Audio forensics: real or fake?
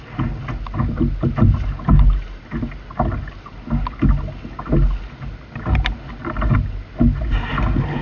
real